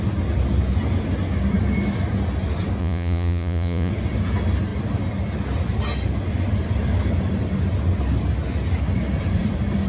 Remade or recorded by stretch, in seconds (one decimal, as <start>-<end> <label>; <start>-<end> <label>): 0.0-2.8 recorded; 2.8-3.9 remade; 3.9-9.9 recorded